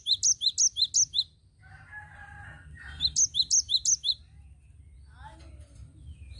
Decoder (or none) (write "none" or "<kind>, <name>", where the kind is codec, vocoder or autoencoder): none